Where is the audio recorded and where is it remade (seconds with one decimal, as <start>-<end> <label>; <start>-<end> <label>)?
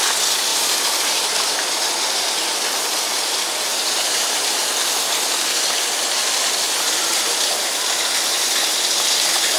0.0-0.5 recorded; 0.5-1.5 remade; 1.5-3.7 recorded; 3.7-4.7 remade; 4.7-9.6 recorded